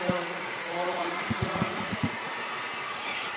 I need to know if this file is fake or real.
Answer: fake